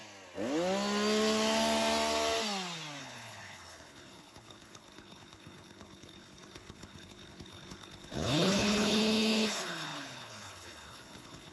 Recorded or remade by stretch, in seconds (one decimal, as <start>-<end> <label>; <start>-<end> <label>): 0.0-3.0 recorded; 3.0-11.5 remade